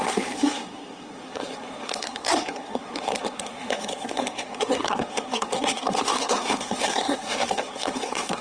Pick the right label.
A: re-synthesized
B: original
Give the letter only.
A